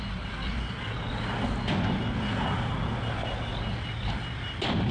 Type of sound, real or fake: real